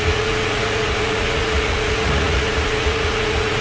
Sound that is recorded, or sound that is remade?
remade